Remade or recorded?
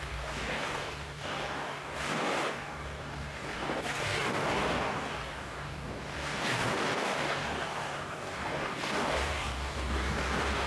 remade